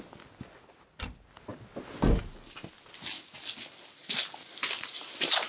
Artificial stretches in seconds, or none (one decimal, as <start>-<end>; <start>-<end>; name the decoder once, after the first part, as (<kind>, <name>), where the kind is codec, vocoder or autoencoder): none